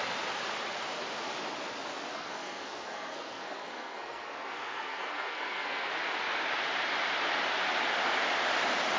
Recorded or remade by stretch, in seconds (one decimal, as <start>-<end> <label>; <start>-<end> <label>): 0.0-2.1 recorded; 2.1-5.9 remade; 5.9-9.0 recorded